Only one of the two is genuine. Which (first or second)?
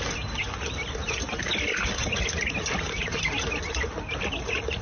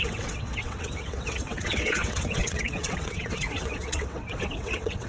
first